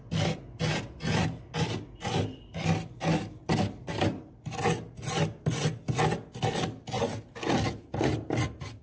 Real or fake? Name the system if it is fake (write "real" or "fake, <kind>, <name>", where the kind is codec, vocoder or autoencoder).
real